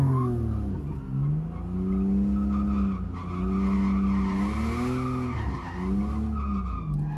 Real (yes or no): yes